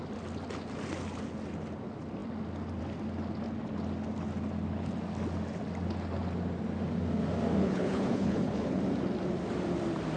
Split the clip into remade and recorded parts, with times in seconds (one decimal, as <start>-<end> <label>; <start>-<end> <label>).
0.0-7.6 recorded; 7.6-8.8 remade; 8.8-10.2 recorded